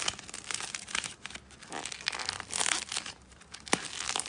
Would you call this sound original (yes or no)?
yes